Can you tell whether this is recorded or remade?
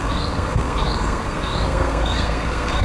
remade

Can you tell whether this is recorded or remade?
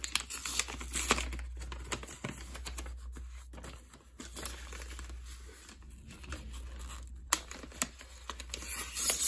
recorded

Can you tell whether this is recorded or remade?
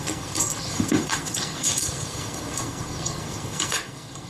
remade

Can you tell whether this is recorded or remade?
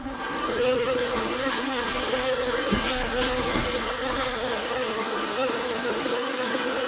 remade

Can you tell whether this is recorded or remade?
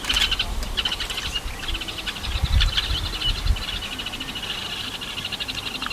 recorded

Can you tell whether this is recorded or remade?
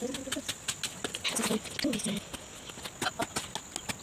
recorded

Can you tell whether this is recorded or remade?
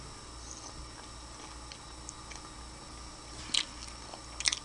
recorded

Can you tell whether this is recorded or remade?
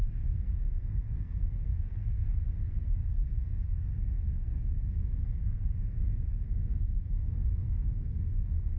remade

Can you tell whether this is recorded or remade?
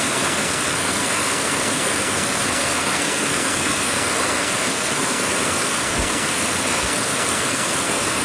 remade